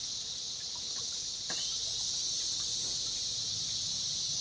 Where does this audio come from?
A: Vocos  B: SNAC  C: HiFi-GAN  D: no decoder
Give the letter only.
D